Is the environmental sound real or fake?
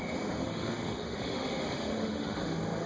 fake